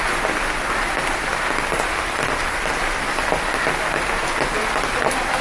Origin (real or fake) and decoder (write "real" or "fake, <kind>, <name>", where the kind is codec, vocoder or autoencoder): real